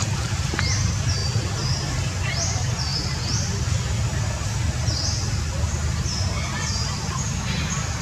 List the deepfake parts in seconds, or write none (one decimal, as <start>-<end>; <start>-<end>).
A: 0.0-1.2; 2.3-2.9